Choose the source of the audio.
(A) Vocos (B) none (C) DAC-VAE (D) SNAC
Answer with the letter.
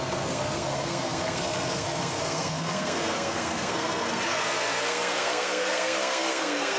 D